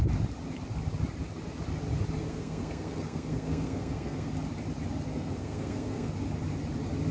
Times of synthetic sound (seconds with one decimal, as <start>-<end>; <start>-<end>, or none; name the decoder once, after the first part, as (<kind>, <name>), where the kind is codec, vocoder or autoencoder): 2.2-4.3 (codec, SNAC); 5.1-6.1